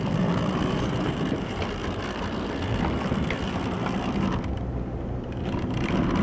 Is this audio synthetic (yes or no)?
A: no